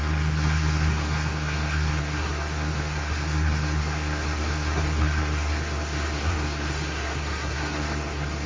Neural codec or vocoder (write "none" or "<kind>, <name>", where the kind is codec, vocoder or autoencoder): codec, SNAC